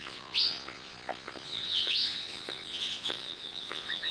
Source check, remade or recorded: remade